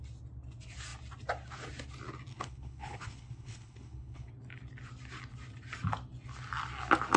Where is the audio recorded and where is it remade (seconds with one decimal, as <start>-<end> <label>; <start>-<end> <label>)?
0.0-2.3 recorded; 2.3-4.3 remade; 4.3-7.2 recorded